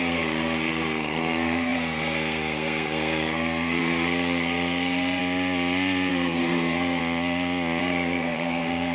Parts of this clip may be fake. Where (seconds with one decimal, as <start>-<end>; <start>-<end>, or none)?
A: 0.0-5.2; 6.1-7.0; 7.8-8.9